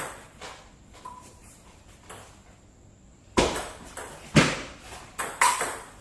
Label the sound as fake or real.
fake